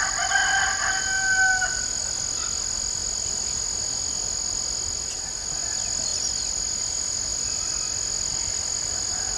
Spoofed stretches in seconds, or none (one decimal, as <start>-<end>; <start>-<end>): none